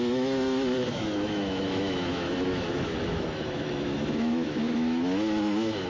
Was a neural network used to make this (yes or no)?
yes